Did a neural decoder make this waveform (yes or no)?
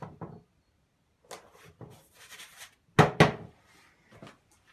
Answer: no